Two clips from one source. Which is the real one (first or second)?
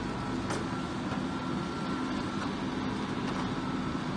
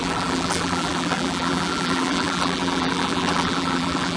first